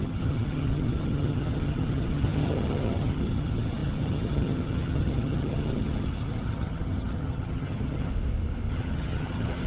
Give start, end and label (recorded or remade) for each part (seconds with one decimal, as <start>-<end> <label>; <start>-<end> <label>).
0.0-8.1 remade; 8.1-8.7 recorded; 8.7-9.7 remade

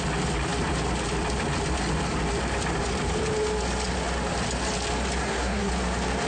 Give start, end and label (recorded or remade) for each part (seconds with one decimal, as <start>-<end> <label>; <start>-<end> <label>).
0.0-5.2 recorded; 5.2-5.7 remade; 5.7-6.3 recorded

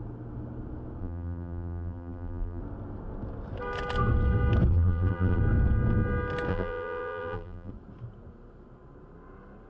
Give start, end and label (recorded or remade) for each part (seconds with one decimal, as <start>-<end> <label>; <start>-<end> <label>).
0.0-1.0 recorded; 1.0-2.6 remade; 2.6-4.7 recorded; 4.7-5.4 remade; 5.4-6.5 recorded; 6.5-7.7 remade; 7.7-9.7 recorded

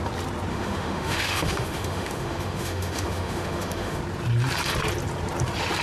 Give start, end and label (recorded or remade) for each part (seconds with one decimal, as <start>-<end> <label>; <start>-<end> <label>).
0.0-0.5 recorded; 0.5-4.0 remade; 4.0-5.8 recorded

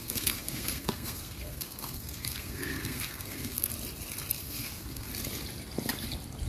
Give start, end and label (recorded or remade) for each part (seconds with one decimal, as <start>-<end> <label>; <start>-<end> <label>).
0.0-3.7 remade; 3.7-4.4 recorded; 4.4-5.1 remade; 5.1-6.5 recorded

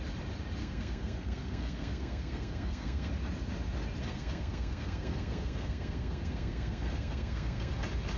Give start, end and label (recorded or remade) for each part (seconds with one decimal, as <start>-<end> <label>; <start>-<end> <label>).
0.0-0.6 recorded; 0.6-3.1 remade; 3.1-4.0 recorded; 4.0-7.7 remade; 7.7-8.2 recorded